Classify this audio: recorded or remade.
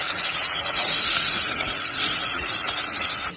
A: remade